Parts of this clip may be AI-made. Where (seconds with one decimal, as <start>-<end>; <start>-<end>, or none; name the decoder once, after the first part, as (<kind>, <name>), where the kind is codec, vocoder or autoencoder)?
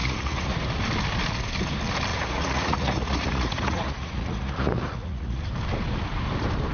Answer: 0.0-0.6 (vocoder, Vocos); 2.1-5.4